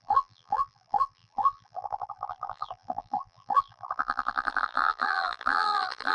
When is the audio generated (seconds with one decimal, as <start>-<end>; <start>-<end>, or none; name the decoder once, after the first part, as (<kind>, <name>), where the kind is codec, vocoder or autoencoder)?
0.0-6.1 (vocoder, BigVGAN v2)